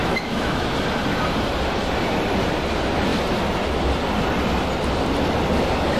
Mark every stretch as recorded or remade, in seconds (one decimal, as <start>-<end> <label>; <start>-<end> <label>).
0.0-0.7 remade; 0.7-6.0 recorded

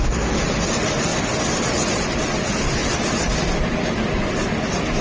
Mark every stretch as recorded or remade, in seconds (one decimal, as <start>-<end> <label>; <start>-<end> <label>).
0.0-5.0 recorded

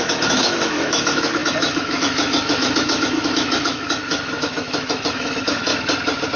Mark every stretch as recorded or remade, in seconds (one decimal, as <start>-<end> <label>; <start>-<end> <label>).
0.0-5.7 remade; 5.7-6.4 recorded

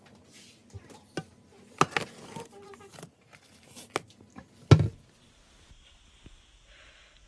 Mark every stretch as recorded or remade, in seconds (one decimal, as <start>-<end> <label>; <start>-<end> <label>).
0.0-7.3 recorded

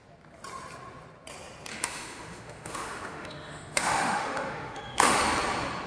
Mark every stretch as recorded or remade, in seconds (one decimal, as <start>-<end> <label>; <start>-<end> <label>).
0.0-1.7 recorded; 1.7-5.2 remade; 5.2-5.9 recorded